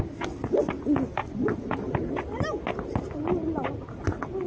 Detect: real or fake real